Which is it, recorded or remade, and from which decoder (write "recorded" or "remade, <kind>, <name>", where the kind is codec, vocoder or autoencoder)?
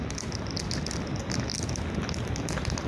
recorded